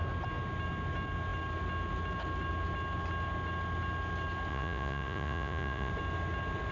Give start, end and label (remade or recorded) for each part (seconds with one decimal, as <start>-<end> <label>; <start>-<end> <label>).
0.0-4.5 recorded; 4.5-5.9 remade; 5.9-6.7 recorded